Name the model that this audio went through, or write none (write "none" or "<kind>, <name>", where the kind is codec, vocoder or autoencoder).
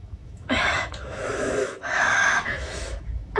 autoencoder, DAC-VAE